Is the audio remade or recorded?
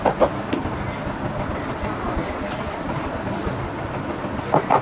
recorded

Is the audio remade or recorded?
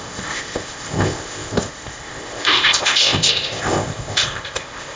remade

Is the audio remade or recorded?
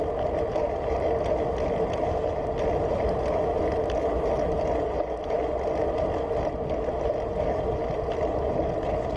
recorded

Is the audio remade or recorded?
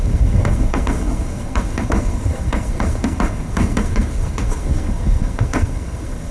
remade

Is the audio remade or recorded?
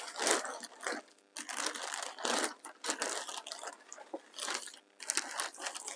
recorded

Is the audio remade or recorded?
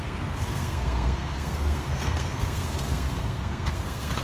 remade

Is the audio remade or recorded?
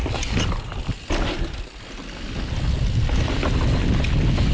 recorded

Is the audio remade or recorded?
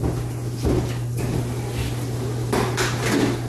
recorded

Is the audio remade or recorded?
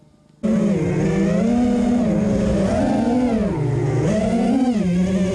recorded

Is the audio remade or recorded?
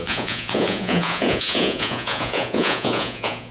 remade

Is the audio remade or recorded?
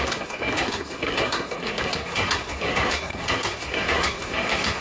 remade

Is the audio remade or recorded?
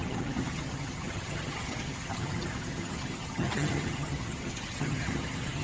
remade